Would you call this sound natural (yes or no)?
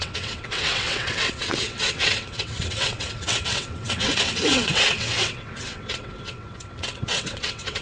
no